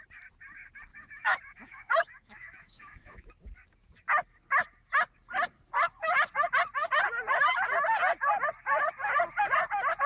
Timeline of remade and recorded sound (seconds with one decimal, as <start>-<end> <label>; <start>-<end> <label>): 0.0-0.9 recorded; 0.9-3.3 remade; 3.3-10.1 recorded